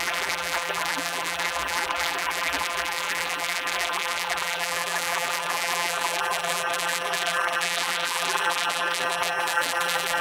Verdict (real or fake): fake